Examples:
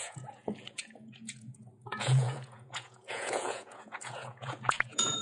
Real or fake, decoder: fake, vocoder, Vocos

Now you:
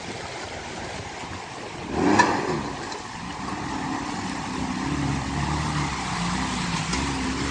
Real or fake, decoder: real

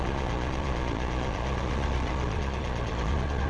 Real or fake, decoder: fake, vocoder, Vocos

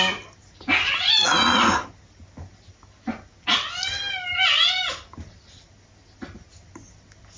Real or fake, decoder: real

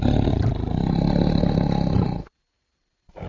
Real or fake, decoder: real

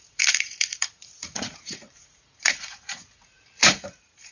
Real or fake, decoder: fake, vocoder, Vocos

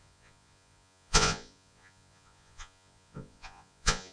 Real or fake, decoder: fake, vocoder, Vocos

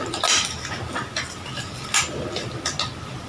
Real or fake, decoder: real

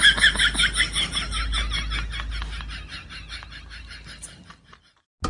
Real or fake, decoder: real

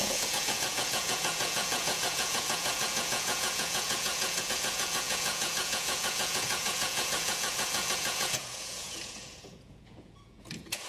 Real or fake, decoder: fake, vocoder, Vocos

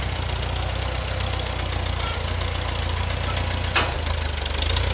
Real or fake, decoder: real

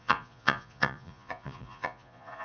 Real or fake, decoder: fake, vocoder, Vocos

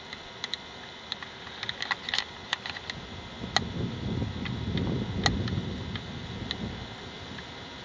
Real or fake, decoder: real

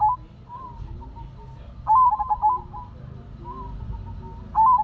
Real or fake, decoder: real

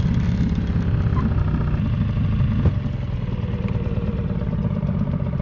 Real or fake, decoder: real